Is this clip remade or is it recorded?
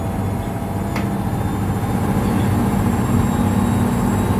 recorded